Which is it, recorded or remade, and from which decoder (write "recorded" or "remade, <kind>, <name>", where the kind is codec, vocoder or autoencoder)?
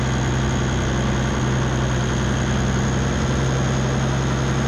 recorded